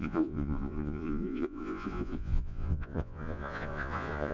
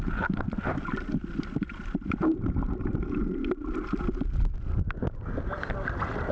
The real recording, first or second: second